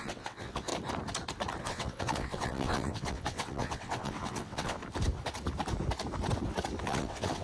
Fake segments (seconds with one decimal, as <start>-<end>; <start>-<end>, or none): 0.0-0.7; 1.6-4.8; 6.8-7.4